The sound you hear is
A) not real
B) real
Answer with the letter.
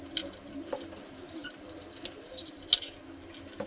B